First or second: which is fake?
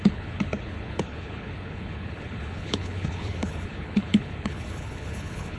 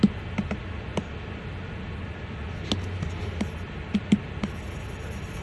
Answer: first